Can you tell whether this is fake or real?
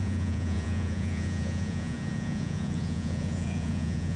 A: fake